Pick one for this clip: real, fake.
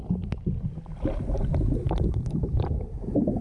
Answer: real